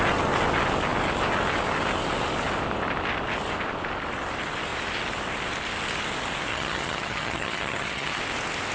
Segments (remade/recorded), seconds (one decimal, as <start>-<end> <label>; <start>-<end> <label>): 0.0-6.5 recorded; 6.5-8.2 remade; 8.2-8.7 recorded